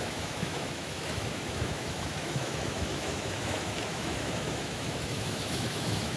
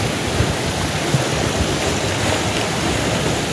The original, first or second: second